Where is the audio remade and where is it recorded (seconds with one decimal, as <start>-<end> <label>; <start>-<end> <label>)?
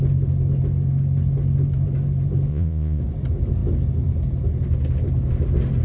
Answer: 0.0-2.5 recorded; 2.5-3.0 remade; 3.0-5.8 recorded